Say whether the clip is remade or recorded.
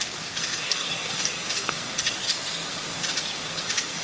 remade